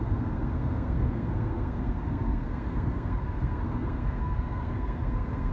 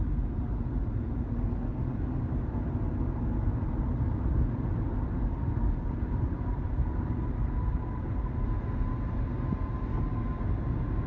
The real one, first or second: second